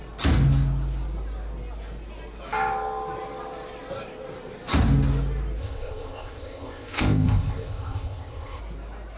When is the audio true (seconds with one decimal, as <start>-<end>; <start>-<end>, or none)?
0.0-5.6; 8.6-9.2